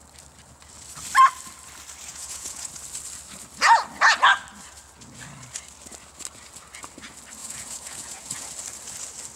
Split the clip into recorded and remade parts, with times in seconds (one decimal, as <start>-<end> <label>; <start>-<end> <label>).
0.0-2.1 recorded; 2.1-2.7 remade; 2.7-7.4 recorded; 7.4-8.5 remade; 8.5-9.4 recorded